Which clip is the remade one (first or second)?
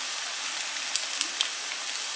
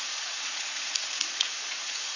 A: second